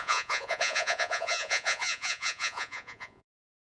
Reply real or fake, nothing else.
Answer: fake